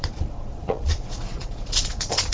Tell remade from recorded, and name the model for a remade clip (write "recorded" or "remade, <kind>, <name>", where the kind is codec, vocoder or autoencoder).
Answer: remade, vocoder, Vocos